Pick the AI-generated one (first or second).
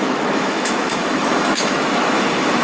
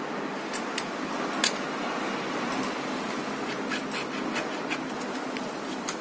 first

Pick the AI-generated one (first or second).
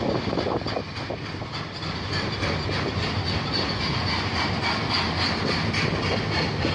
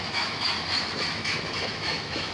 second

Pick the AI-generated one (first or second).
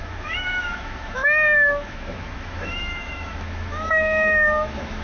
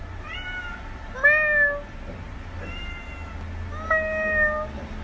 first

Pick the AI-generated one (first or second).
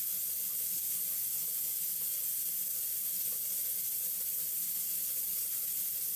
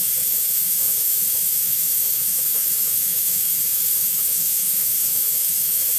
second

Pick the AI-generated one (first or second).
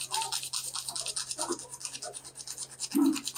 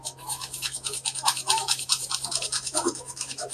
second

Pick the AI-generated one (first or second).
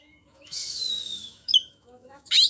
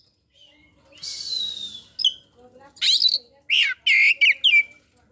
first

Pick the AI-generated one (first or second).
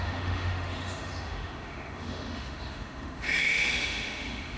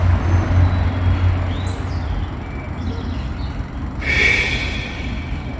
first